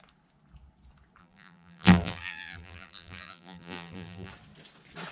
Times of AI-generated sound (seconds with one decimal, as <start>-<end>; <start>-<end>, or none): 1.2-4.3